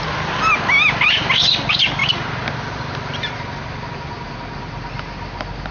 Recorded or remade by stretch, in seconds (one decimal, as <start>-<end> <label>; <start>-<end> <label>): 0.0-5.7 recorded